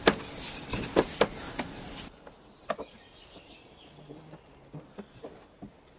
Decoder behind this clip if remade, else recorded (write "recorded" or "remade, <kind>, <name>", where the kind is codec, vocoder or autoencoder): recorded